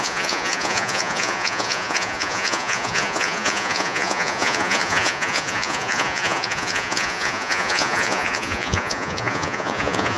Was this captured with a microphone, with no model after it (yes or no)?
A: no